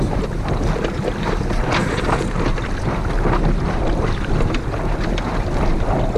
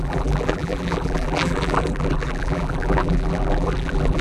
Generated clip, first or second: second